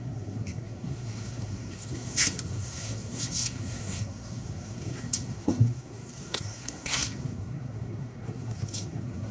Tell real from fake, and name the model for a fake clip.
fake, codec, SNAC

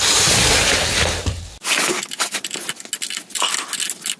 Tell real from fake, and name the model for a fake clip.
real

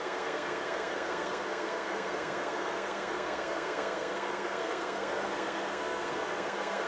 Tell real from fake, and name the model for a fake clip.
fake, codec, SNAC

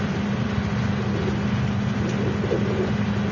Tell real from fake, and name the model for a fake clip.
real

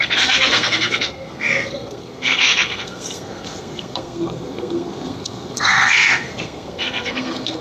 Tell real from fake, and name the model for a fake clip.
fake, codec, SNAC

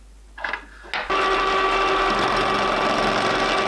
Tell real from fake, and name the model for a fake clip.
real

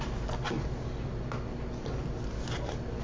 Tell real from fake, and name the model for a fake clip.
real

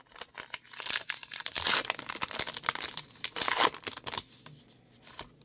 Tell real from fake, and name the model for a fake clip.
real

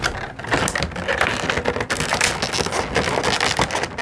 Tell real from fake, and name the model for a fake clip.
real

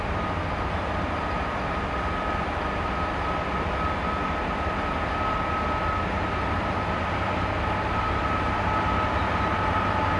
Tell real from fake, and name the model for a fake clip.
real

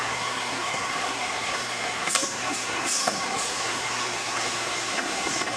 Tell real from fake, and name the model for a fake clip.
fake, codec, SNAC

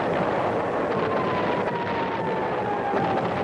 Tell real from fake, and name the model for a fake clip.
real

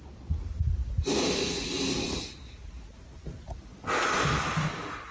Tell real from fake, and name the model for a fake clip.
real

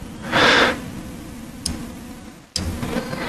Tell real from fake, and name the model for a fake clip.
real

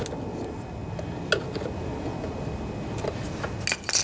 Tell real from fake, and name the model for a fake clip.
real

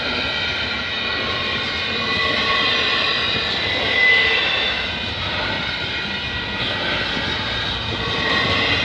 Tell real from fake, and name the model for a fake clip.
real